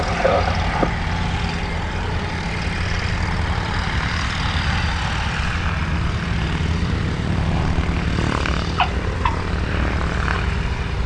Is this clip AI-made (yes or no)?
no